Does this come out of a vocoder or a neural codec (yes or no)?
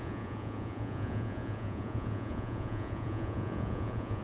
yes